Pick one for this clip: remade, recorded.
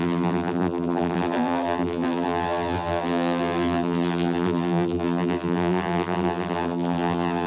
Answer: remade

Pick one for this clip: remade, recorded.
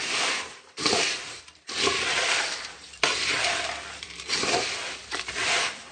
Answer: remade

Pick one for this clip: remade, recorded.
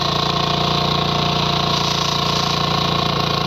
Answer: recorded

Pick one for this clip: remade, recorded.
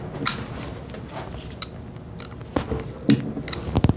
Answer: recorded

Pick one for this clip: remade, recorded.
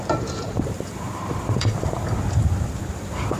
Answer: remade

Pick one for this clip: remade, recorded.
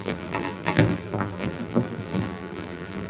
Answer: remade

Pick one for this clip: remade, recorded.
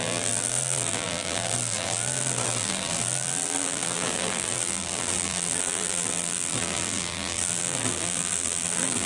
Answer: remade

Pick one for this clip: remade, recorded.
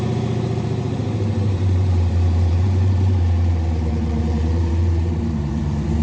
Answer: remade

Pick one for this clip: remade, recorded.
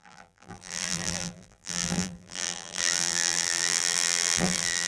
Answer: remade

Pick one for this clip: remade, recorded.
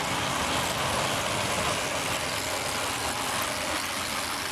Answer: recorded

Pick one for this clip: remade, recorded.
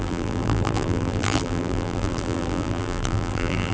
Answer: remade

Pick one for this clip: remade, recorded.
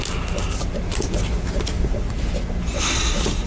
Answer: recorded